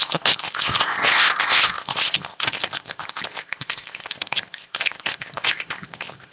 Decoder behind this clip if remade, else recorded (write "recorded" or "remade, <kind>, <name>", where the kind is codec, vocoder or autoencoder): remade, codec, ZipCodec